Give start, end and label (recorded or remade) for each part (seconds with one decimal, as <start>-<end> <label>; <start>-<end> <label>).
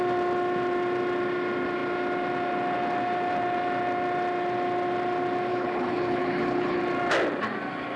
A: 0.0-5.5 recorded; 5.5-6.8 remade; 6.8-8.0 recorded